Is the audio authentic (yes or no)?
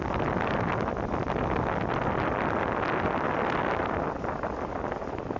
yes